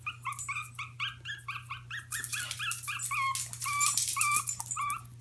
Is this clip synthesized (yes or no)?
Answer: no